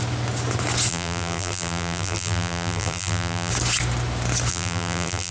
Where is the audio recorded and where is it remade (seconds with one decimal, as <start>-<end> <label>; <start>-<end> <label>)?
0.0-0.9 recorded; 0.9-3.5 remade; 3.5-4.5 recorded; 4.5-5.3 remade